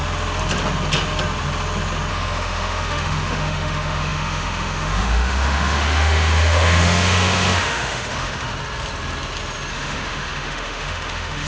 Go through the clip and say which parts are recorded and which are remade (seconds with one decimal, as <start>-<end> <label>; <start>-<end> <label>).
0.0-2.1 recorded; 2.1-8.5 remade; 8.5-9.7 recorded; 9.7-11.5 remade